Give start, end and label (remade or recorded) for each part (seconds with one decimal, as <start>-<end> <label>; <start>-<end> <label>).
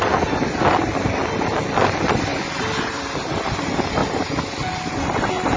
0.0-2.3 remade; 2.3-2.9 recorded; 2.9-4.0 remade; 4.0-5.6 recorded